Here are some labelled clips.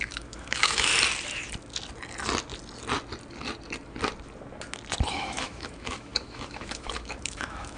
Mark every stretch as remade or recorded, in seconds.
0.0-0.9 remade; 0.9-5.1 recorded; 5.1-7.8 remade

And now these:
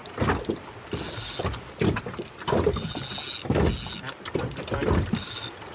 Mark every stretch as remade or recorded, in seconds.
0.0-5.7 recorded

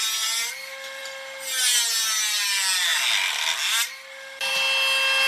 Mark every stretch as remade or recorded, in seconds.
0.0-5.3 recorded

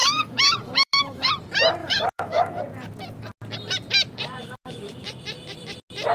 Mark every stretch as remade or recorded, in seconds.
0.0-1.3 remade; 1.3-1.8 recorded; 1.8-2.6 remade; 2.6-4.4 recorded; 4.4-5.1 remade; 5.1-6.1 recorded

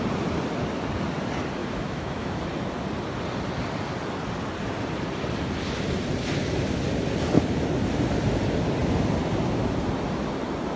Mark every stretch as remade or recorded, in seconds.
0.0-1.6 recorded; 1.6-2.4 remade; 2.4-10.8 recorded

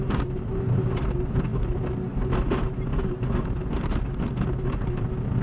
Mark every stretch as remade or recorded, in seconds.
0.0-5.4 recorded